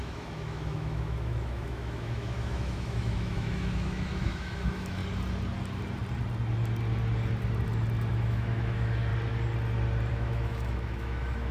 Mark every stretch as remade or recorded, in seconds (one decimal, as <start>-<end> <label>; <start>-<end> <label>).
0.0-5.0 remade; 5.0-8.1 recorded; 8.1-9.1 remade; 9.1-10.1 recorded; 10.1-11.5 remade